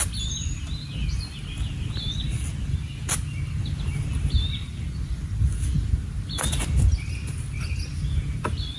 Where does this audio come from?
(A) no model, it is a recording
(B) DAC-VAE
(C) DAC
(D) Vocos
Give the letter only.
A